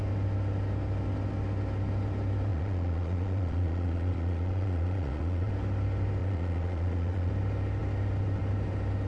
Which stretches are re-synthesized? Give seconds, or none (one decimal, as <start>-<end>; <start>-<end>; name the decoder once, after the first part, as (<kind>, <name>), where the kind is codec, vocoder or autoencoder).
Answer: 2.5-5.5 (vocoder, Vocos); 6.2-7.3